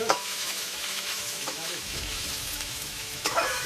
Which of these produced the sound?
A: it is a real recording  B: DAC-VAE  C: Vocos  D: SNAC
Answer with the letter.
B